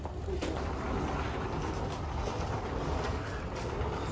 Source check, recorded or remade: recorded